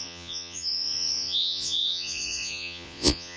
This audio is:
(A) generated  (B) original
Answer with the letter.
A